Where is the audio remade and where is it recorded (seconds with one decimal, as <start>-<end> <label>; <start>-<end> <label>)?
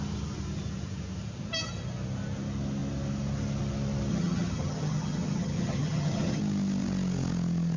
0.0-4.1 recorded; 4.1-6.4 remade; 6.4-7.8 recorded